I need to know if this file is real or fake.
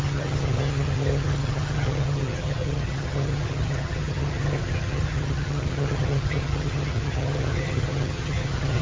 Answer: fake